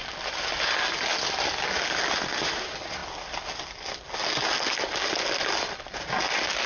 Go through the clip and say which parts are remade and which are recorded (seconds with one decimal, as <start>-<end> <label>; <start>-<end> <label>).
0.0-6.7 recorded

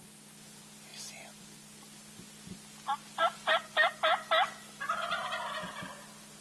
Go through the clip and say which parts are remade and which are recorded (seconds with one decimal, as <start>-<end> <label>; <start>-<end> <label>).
0.0-6.4 recorded

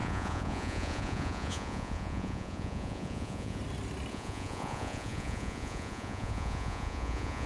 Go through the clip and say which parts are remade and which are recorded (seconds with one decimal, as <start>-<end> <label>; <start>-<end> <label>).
0.0-3.6 remade; 3.6-4.1 recorded; 4.1-7.5 remade

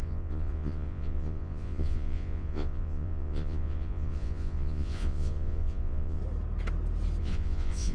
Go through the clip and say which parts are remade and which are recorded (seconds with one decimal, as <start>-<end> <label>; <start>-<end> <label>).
0.0-6.2 remade; 6.2-7.2 recorded; 7.2-7.9 remade

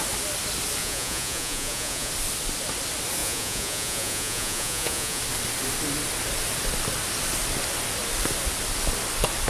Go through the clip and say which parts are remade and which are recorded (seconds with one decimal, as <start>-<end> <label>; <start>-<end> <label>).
0.0-0.8 recorded; 0.8-2.1 remade; 2.1-3.2 recorded; 3.2-5.2 remade; 5.2-9.5 recorded

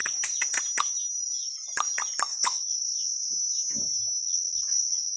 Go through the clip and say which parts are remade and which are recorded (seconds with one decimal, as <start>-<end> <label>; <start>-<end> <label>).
0.0-2.3 recorded; 2.3-3.3 remade; 3.3-4.2 recorded; 4.2-5.2 remade

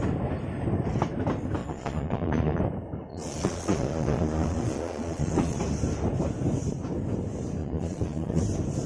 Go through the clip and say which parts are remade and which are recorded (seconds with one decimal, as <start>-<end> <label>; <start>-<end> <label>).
0.0-1.6 recorded; 1.6-2.6 remade; 2.6-3.1 recorded; 3.1-5.6 remade; 5.6-7.6 recorded; 7.6-8.4 remade; 8.4-8.9 recorded